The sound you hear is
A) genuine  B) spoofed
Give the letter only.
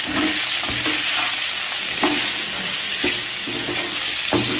A